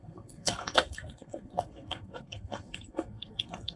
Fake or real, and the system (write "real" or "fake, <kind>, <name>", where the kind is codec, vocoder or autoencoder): fake, codec, SNAC